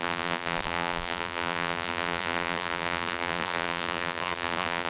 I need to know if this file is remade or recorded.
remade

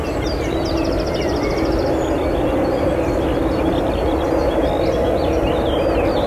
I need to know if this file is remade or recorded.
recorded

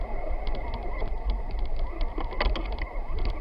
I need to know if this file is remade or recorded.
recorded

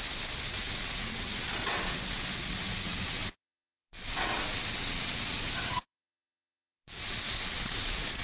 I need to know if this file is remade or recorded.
remade